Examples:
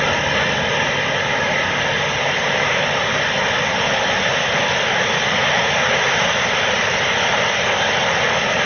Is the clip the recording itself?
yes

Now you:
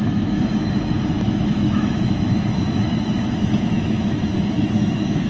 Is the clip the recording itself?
no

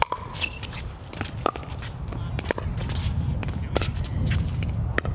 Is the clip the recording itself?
yes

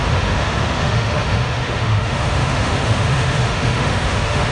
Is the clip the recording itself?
no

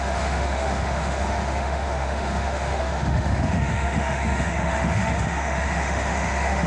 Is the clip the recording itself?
no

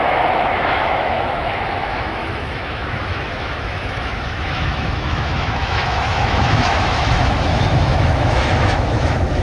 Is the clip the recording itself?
no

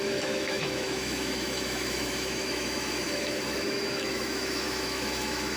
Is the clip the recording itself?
no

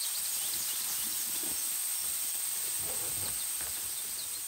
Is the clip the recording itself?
yes